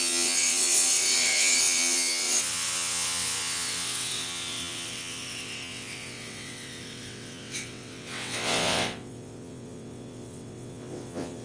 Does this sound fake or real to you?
fake